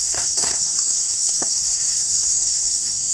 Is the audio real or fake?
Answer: fake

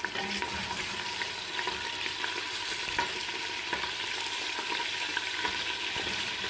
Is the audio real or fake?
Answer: real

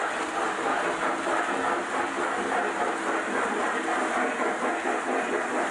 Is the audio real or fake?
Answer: real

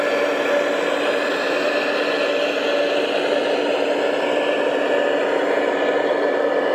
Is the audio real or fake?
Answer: real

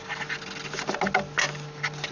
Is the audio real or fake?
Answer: real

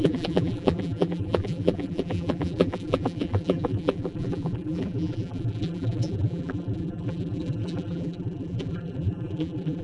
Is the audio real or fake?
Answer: fake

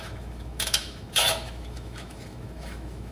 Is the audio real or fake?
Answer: fake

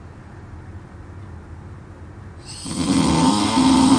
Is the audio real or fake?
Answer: real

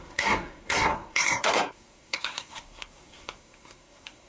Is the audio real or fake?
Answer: fake